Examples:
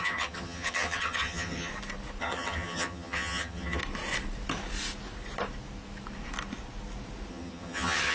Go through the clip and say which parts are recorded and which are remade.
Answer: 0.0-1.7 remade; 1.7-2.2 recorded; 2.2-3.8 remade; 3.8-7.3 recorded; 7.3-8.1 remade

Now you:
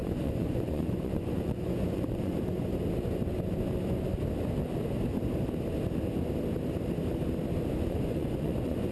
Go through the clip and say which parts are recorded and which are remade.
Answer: 0.0-2.7 remade; 2.7-7.7 recorded; 7.7-8.9 remade

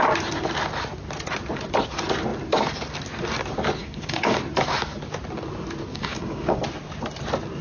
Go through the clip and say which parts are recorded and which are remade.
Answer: 0.0-3.8 recorded; 3.8-4.4 remade; 4.4-5.9 recorded; 5.9-6.6 remade; 6.6-7.6 recorded

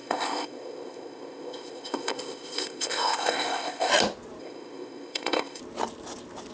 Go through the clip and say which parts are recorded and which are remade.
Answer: 0.0-3.9 remade; 3.9-4.4 recorded; 4.4-5.6 remade; 5.6-6.5 recorded

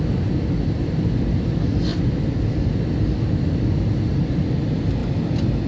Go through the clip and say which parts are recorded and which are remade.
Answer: 0.0-5.7 recorded